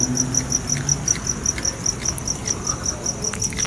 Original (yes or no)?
yes